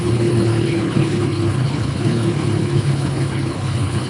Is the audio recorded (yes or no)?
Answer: no